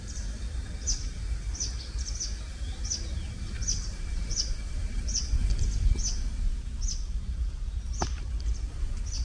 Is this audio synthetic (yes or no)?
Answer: no